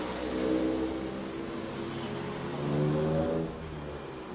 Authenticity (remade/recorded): recorded